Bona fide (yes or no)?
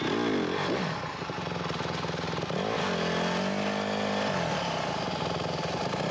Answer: yes